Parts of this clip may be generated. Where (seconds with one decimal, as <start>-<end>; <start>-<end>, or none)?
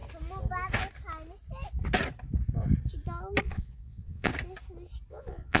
3.4-4.3; 5.1-5.6